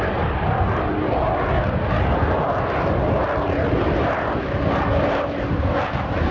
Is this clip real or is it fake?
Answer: real